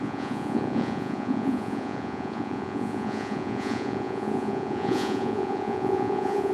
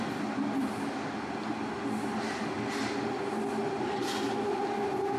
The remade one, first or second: first